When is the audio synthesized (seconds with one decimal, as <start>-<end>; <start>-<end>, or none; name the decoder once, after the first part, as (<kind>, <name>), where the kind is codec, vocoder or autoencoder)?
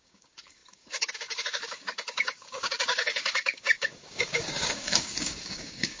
0.0-6.0 (codec, DAC)